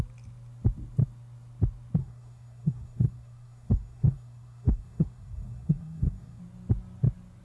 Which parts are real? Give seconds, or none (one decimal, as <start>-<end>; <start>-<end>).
0.0-2.0; 6.4-7.4